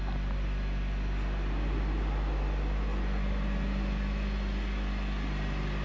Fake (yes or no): no